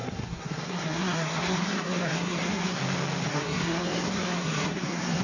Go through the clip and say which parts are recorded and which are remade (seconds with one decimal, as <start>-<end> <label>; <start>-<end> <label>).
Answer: 0.0-2.8 remade; 2.8-3.3 recorded; 3.3-5.2 remade